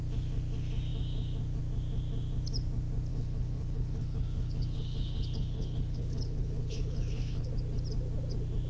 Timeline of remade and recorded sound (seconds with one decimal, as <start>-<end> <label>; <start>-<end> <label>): 0.0-3.1 recorded; 3.1-7.5 remade; 7.5-8.7 recorded